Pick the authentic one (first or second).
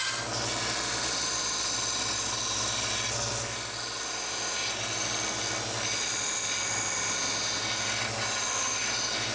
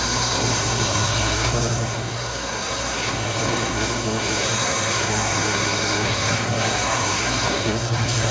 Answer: first